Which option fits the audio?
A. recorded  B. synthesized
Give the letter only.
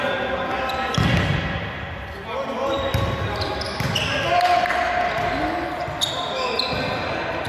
A